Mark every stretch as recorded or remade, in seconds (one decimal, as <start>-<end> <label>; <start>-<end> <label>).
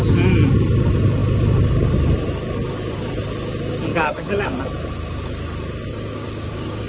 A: 0.0-3.9 recorded; 3.9-4.6 remade; 4.6-5.9 recorded; 5.9-6.9 remade